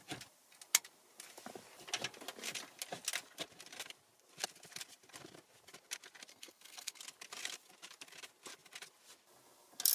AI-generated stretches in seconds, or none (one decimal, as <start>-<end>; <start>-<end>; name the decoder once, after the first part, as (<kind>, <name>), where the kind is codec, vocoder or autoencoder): 6.3-7.0 (codec, SNAC)